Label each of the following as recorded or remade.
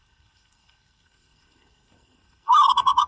remade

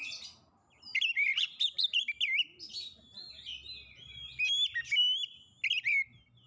recorded